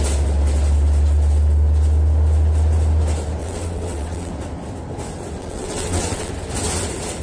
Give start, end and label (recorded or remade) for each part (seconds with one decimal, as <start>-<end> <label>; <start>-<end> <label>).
0.0-3.4 recorded; 3.4-4.3 remade; 4.3-5.4 recorded; 5.4-6.3 remade; 6.3-7.2 recorded